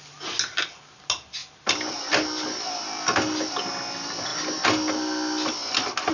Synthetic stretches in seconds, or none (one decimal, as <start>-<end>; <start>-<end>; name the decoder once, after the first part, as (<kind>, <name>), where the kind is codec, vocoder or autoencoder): none

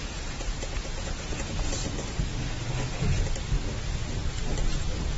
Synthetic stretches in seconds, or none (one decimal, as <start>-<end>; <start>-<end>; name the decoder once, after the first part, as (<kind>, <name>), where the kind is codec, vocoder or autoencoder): 0.0-1.8 (vocoder, Vocos)